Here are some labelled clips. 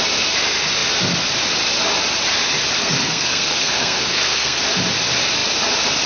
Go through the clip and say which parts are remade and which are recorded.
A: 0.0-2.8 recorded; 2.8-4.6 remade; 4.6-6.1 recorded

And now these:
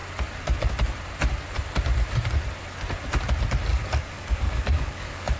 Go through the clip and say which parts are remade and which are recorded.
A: 0.0-3.7 recorded; 3.7-5.4 remade

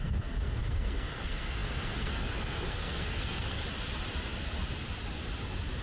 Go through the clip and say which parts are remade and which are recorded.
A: 0.0-3.6 remade; 3.6-5.8 recorded

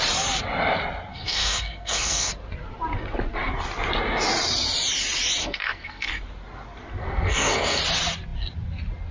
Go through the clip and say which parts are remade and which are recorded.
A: 0.0-1.1 recorded; 1.1-2.3 remade; 2.3-5.4 recorded; 5.4-6.1 remade; 6.1-7.0 recorded; 7.0-7.8 remade; 7.8-9.1 recorded